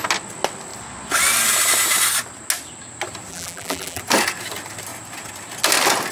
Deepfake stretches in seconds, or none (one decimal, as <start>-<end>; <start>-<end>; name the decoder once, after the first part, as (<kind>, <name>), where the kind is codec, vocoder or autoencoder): 3.3-4.0 (vocoder, BigVGAN v2)